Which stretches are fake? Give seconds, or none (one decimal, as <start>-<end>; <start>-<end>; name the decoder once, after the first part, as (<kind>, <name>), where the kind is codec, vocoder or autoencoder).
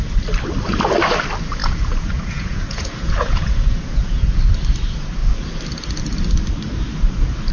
1.6-4.4 (vocoder, Vocos)